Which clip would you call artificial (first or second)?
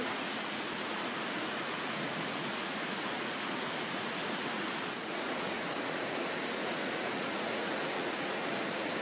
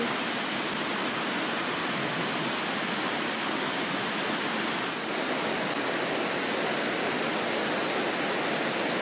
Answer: first